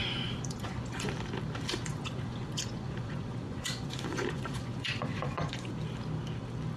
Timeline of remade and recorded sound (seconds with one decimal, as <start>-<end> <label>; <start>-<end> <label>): 0.0-1.1 remade; 1.1-1.9 recorded; 1.9-5.7 remade; 5.7-6.8 recorded